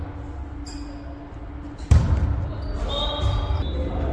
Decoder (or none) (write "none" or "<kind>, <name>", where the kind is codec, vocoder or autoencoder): none